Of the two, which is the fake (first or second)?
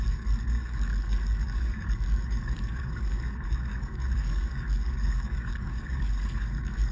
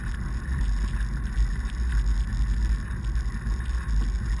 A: first